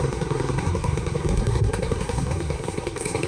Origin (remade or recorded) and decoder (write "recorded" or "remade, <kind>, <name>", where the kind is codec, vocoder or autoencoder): remade, codec, SNAC